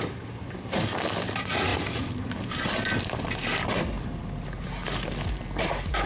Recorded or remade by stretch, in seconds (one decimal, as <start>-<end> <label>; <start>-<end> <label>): 0.0-6.1 recorded